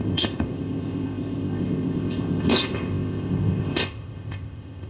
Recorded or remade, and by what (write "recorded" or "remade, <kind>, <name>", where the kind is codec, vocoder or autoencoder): remade, codec, ZipCodec